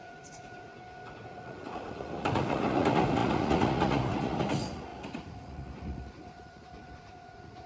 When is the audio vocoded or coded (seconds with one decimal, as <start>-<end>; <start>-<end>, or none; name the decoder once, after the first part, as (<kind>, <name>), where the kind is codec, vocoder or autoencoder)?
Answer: 0.0-0.7 (vocoder, Vocos); 1.3-7.7